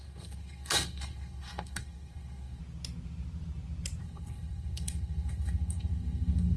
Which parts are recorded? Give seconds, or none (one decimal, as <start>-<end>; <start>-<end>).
2.6-4.0